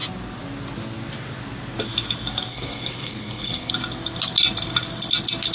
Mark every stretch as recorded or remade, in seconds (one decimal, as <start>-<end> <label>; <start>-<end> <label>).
0.0-2.5 recorded; 2.5-3.7 remade; 3.7-5.5 recorded